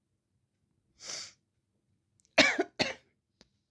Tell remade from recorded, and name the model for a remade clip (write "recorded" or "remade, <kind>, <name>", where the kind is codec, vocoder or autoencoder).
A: recorded